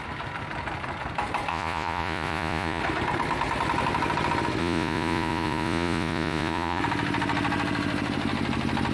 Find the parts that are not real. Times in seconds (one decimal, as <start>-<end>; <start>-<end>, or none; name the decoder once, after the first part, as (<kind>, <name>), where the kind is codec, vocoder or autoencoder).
1.5-2.8 (vocoder, Vocos); 4.6-6.8